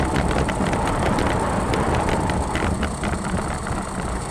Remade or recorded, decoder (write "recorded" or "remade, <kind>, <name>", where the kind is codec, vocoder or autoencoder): recorded